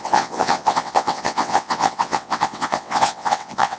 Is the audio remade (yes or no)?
yes